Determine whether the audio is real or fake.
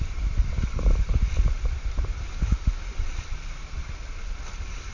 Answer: real